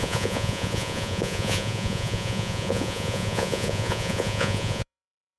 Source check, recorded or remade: remade